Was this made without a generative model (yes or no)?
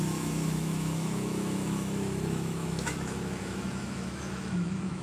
no